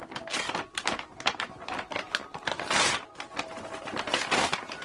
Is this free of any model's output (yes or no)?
yes